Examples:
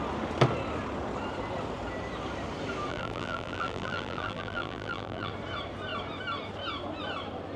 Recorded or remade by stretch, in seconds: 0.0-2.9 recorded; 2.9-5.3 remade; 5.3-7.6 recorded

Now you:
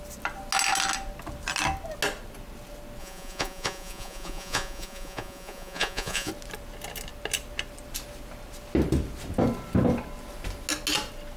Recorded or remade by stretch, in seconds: 0.0-3.0 recorded; 3.0-6.3 remade; 6.3-11.4 recorded